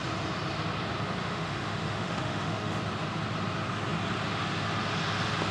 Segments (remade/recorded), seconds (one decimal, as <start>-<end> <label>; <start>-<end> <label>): 0.0-1.2 recorded; 1.2-2.8 remade; 2.8-5.5 recorded